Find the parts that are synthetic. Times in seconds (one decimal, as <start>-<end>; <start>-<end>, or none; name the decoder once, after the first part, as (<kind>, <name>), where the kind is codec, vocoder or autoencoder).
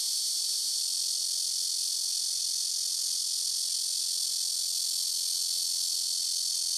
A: 0.0-0.8 (vocoder, BigVGAN v2)